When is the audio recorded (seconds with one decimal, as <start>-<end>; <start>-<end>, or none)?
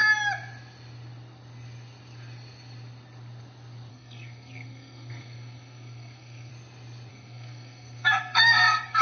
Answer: 0.0-3.9; 6.5-7.1